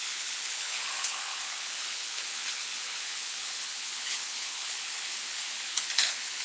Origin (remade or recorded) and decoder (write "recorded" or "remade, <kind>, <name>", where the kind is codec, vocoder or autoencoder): remade, codec, HILCodec